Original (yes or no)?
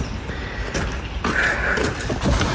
yes